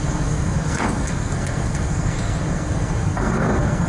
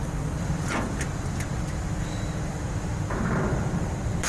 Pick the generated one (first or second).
first